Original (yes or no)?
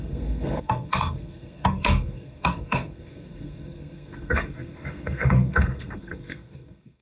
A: no